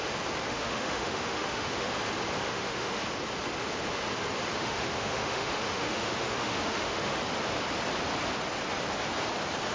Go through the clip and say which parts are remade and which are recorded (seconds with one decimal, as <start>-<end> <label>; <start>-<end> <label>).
0.0-0.5 recorded; 0.5-1.9 remade; 1.9-2.4 recorded; 2.4-3.0 remade; 3.0-4.6 recorded; 4.6-7.2 remade; 7.2-9.7 recorded